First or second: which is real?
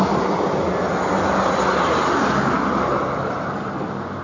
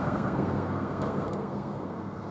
first